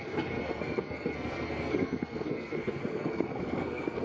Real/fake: fake